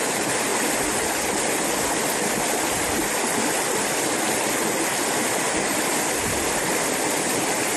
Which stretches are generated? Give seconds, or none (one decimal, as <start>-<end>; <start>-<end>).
none